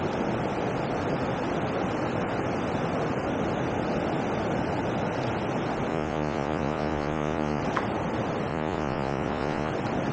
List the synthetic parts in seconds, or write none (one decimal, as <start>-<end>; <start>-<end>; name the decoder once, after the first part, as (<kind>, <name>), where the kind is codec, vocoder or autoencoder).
5.9-7.6 (vocoder, Vocos); 8.5-9.7